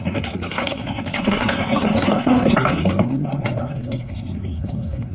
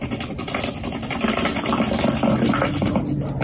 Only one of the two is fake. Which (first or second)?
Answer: first